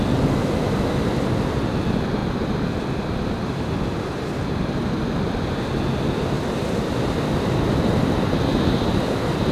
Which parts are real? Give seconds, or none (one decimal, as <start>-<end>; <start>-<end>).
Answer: 0.0-9.5